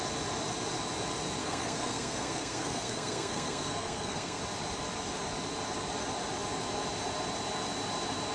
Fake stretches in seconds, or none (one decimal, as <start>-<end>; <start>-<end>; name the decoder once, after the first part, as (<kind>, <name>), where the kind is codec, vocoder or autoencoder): 1.4-4.4 (codec, SNAC)